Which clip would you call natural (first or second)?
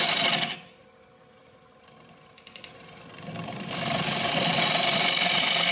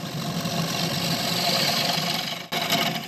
second